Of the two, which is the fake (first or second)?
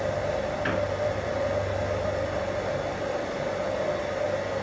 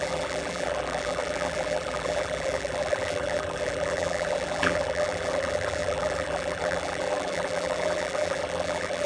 second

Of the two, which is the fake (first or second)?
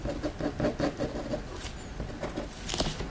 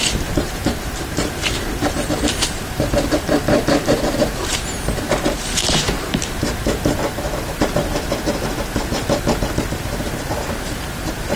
second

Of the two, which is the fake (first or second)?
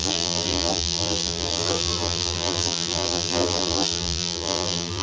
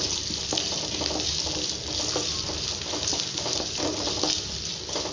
first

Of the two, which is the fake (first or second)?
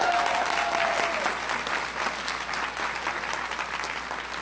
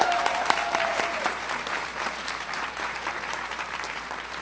second